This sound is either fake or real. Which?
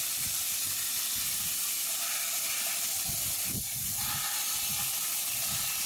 real